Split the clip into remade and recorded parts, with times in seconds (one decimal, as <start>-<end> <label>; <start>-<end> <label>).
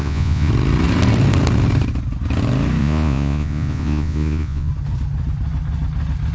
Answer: 0.0-0.5 remade; 0.5-2.8 recorded; 2.8-4.7 remade; 4.7-6.3 recorded